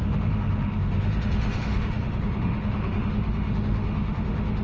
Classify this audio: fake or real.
fake